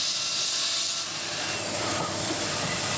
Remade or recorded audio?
recorded